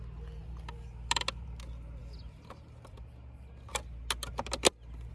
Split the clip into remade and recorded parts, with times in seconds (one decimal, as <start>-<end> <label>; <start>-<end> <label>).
0.0-5.1 recorded